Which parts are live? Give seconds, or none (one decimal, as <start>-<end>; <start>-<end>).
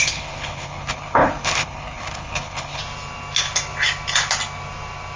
2.8-5.2